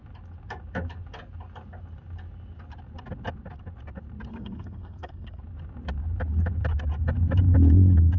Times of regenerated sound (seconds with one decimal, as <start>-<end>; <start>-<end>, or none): 4.3-5.4